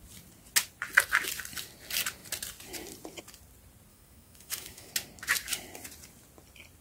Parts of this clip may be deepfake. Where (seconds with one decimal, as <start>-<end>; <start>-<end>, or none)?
3.9-4.9